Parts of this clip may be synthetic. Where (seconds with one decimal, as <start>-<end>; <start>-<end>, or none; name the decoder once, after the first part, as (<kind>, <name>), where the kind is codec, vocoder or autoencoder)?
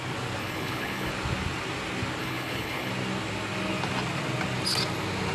0.4-1.1 (codec, HILCodec); 2.2-2.9